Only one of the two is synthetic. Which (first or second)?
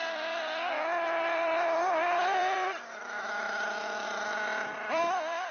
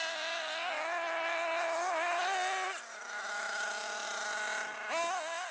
first